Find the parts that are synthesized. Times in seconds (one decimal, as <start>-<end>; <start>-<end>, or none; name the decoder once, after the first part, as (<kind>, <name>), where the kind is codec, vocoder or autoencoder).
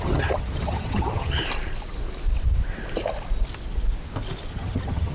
0.0-1.4 (vocoder, HiFi-GAN); 4.5-5.1